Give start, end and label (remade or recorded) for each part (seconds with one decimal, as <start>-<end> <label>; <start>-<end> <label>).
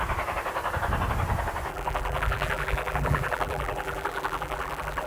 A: 0.0-1.7 recorded; 1.7-5.1 remade